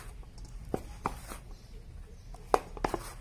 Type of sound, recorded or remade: recorded